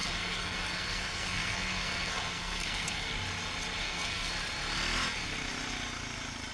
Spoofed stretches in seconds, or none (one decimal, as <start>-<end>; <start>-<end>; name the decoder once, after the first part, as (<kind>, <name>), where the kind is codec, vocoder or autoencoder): 0.0-3.1 (codec, SNAC); 3.8-4.3